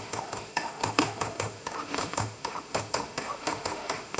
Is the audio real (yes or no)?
no